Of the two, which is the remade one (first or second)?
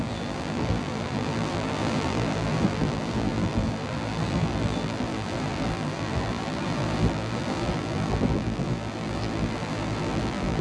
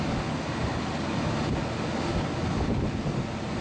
first